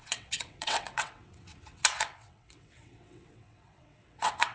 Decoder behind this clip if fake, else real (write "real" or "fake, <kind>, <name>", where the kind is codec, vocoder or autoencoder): fake, vocoder, WaveNeXt